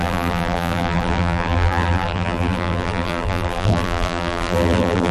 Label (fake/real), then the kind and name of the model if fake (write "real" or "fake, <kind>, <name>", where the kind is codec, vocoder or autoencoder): fake, vocoder, BigVGAN v2